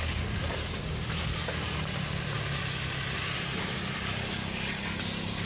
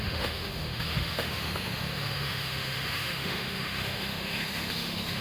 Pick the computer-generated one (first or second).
second